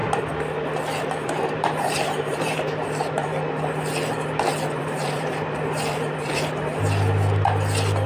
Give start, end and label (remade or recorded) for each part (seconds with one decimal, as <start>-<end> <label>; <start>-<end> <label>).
0.0-1.0 recorded; 1.0-3.3 remade; 3.3-4.8 recorded; 4.8-6.7 remade; 6.7-8.1 recorded